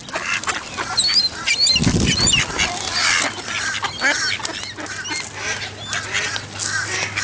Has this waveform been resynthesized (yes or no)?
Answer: no